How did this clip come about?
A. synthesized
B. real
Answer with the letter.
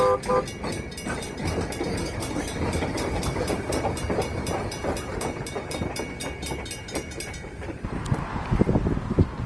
B